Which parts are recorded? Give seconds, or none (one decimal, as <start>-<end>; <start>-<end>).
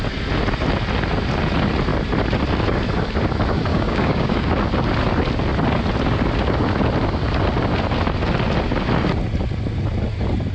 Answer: 0.0-3.7; 4.5-10.5